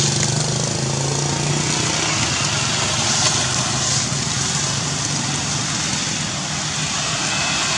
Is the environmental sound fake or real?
real